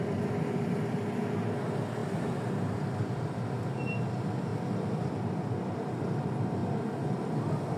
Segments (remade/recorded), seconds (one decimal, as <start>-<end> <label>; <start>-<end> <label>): 0.0-2.0 recorded; 2.0-4.1 remade; 4.1-4.5 recorded; 4.5-5.9 remade; 5.9-7.8 recorded